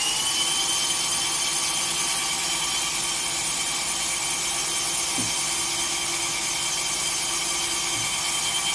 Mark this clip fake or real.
real